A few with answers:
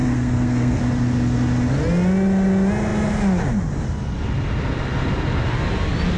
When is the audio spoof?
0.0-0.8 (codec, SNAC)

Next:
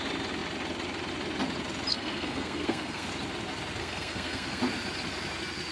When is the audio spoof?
1.9-3.1 (codec, SNAC); 3.8-4.6